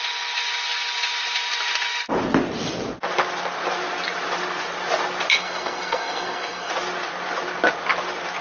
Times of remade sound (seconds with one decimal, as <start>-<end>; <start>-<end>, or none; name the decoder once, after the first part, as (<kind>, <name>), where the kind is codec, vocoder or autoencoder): 5.4-6.7 (codec, SNAC)